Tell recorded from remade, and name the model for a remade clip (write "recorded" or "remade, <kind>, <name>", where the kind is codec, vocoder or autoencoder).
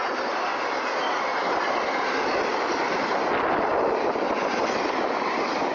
recorded